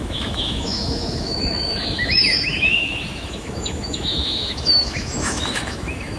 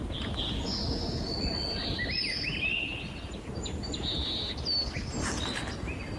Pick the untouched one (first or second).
second